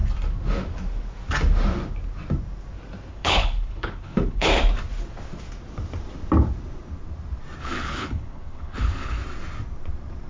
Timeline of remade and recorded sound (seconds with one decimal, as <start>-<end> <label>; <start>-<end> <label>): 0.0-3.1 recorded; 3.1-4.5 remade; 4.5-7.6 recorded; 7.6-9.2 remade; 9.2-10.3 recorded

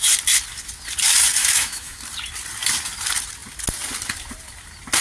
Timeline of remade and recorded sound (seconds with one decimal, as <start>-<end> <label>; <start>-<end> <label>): 0.0-1.4 recorded; 1.4-2.0 remade; 2.0-5.0 recorded

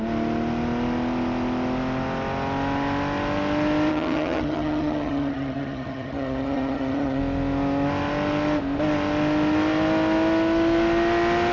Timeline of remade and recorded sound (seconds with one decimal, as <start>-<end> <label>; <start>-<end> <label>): 0.0-3.9 recorded; 3.9-7.2 remade; 7.2-11.5 recorded

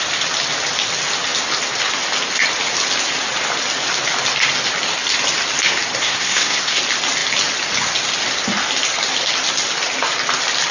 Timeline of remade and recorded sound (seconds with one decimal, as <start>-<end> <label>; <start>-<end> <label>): 0.0-6.0 recorded; 6.0-6.8 remade; 6.8-10.7 recorded

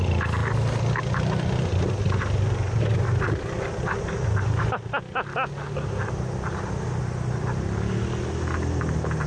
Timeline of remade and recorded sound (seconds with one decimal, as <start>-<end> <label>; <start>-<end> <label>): 0.0-9.3 recorded